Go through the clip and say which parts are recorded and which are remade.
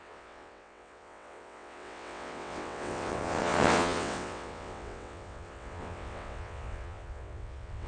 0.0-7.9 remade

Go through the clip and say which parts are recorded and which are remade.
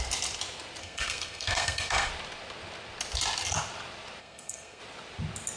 0.0-0.8 recorded; 0.8-2.1 remade; 2.1-4.2 recorded; 4.2-4.8 remade; 4.8-5.6 recorded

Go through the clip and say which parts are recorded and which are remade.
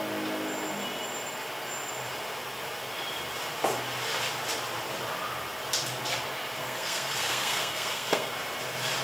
0.0-6.6 recorded; 6.6-8.3 remade; 8.3-9.0 recorded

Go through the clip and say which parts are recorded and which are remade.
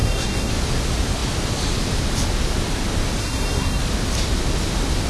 0.0-0.5 remade; 0.5-3.2 recorded; 3.2-3.8 remade; 3.8-5.1 recorded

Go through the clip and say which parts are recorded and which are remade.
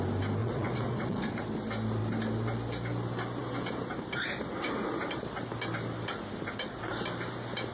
0.0-0.4 recorded; 0.4-1.4 remade; 1.4-7.7 recorded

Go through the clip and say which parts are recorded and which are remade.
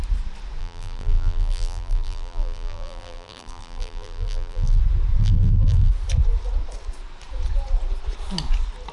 0.0-0.6 recorded; 0.6-4.8 remade; 4.8-5.2 recorded; 5.2-5.9 remade; 5.9-8.9 recorded